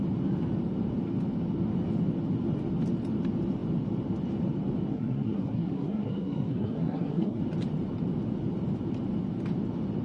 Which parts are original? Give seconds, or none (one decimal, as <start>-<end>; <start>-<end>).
0.0-4.9; 7.4-10.0